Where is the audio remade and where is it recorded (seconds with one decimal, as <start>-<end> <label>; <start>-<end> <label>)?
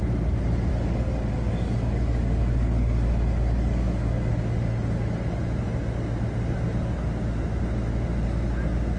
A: 0.0-0.7 recorded; 0.7-4.3 remade; 4.3-9.0 recorded